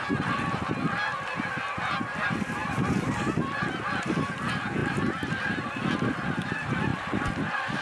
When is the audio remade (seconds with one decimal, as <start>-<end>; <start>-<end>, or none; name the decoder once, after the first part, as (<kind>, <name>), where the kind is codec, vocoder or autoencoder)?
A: 4.8-6.1 (vocoder, BigVGAN v2); 6.9-7.8